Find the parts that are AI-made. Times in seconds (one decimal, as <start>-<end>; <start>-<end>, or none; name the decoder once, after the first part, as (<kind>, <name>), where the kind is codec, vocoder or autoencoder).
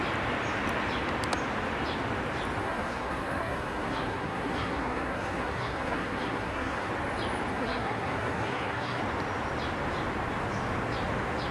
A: 2.6-6.9 (codec, SNAC); 7.5-9.0